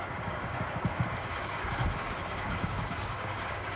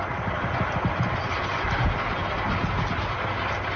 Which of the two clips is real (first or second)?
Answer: second